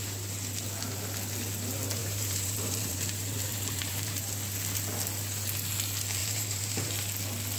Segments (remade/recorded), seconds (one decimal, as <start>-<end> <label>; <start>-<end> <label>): 0.0-2.0 recorded; 2.0-4.2 remade; 4.2-6.2 recorded; 6.2-6.9 remade; 6.9-7.6 recorded